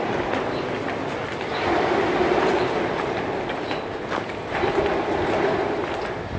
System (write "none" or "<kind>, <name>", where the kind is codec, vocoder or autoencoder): none